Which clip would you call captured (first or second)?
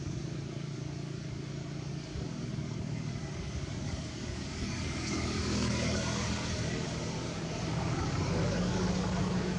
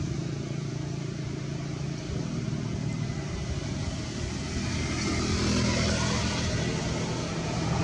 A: second